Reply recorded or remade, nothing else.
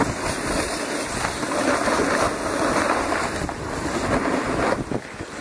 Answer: recorded